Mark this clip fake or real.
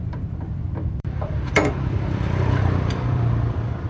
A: fake